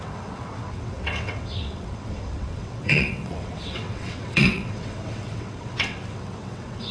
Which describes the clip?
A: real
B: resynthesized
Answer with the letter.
B